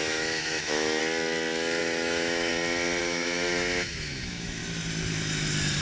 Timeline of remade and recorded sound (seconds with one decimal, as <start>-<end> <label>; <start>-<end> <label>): 0.0-1.0 remade; 1.0-1.8 recorded; 1.8-2.5 remade; 2.5-3.0 recorded; 3.0-4.6 remade; 4.6-5.8 recorded